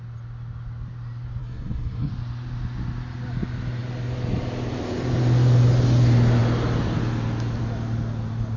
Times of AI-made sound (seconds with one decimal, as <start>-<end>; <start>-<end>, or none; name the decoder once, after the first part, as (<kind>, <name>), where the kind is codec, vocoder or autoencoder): 1.4-2.1 (codec, SNAC)